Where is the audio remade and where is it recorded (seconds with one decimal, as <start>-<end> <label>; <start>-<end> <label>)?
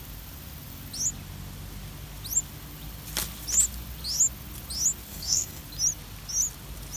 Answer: 0.0-5.1 recorded; 5.1-5.6 remade; 5.6-7.0 recorded